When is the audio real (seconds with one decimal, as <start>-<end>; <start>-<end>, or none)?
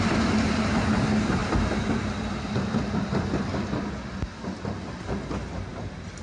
0.0-1.4; 5.1-5.7